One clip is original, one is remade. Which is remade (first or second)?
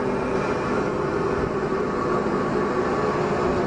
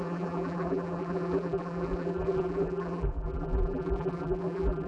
second